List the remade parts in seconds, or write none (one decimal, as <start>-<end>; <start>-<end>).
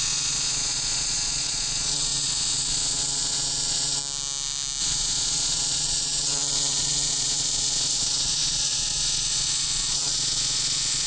0.0-4.0; 4.8-11.1